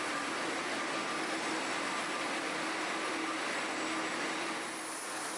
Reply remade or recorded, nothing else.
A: recorded